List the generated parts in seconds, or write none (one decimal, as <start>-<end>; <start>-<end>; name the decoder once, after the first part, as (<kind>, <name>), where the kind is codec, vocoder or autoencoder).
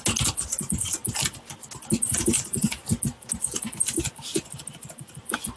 none